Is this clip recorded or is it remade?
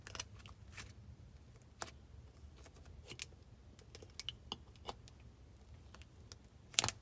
recorded